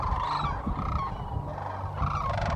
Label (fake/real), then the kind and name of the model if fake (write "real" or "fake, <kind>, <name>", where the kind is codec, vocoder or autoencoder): real